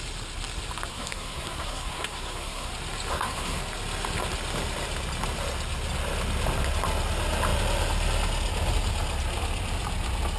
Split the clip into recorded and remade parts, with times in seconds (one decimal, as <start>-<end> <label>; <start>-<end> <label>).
0.0-0.9 recorded; 0.9-2.7 remade; 2.7-3.1 recorded; 3.1-3.6 remade; 3.6-10.4 recorded